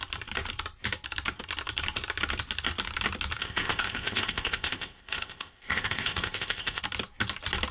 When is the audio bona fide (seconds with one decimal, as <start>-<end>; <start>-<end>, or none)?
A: 0.0-3.4; 6.8-7.7